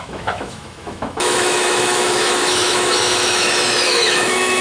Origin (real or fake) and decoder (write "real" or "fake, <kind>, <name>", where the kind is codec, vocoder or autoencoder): fake, autoencoder, DAC-VAE